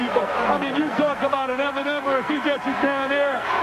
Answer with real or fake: fake